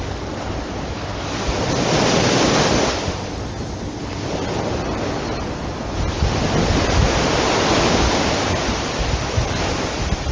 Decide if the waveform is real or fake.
real